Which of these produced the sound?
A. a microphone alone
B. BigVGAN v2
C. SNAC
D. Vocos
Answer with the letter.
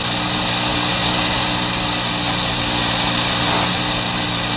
A